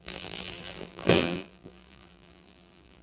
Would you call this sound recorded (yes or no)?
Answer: no